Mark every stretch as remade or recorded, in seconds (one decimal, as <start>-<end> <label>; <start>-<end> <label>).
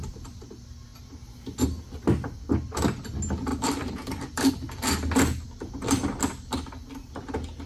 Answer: 0.0-3.5 recorded; 3.5-4.5 remade; 4.5-7.7 recorded